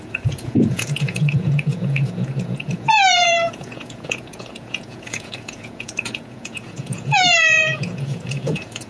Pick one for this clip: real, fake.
fake